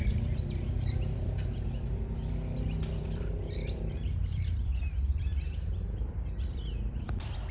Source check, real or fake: fake